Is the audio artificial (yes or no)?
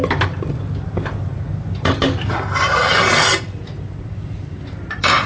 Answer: no